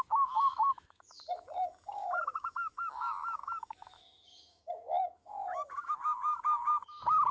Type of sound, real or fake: fake